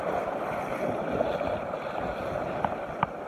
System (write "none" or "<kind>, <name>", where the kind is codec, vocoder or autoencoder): none